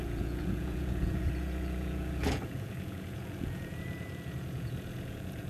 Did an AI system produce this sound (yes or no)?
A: yes